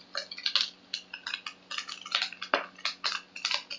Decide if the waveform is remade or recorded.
recorded